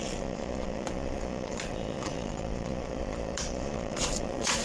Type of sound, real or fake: fake